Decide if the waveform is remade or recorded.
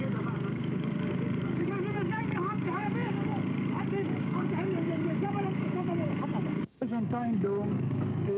remade